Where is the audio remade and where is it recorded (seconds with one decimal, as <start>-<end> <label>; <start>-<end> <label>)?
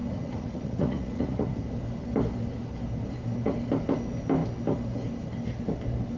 0.0-1.5 remade; 1.5-6.2 recorded